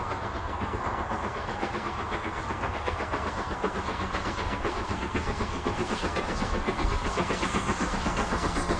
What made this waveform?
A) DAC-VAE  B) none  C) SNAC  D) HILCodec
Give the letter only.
C